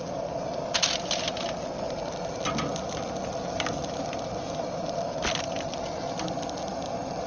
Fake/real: real